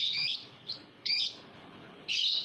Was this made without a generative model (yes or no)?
no